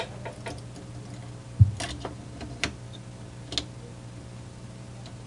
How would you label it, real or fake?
real